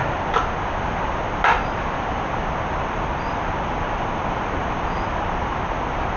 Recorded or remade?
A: remade